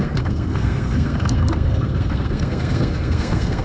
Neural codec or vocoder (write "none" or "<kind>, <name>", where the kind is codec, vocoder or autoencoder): codec, SNAC